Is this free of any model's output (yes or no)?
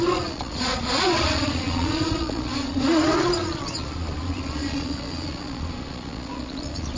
no